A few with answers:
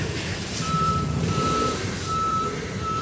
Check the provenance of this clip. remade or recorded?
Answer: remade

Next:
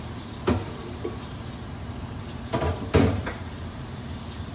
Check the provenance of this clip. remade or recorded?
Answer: remade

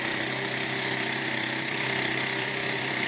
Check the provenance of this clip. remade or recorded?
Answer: remade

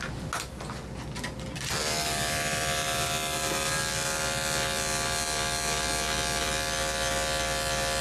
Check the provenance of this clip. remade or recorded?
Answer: recorded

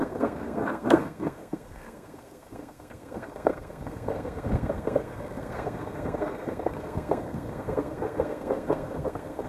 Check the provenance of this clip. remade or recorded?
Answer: remade